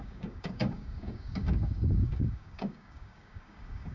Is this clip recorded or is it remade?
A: remade